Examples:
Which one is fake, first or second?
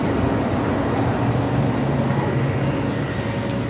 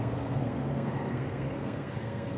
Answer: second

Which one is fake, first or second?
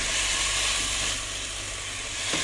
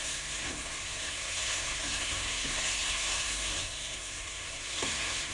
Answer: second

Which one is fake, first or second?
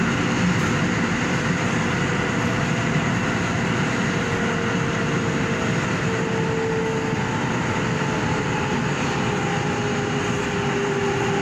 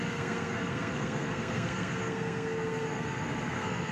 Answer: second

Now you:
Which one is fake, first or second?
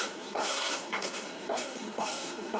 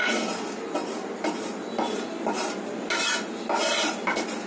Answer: first